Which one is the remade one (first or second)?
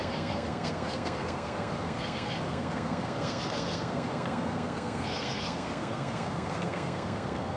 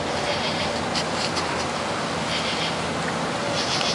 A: first